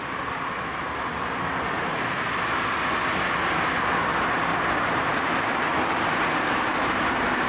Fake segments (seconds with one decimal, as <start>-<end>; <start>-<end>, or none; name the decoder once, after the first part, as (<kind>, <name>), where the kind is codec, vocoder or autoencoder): 4.5-7.5 (vocoder, BigVGAN v2)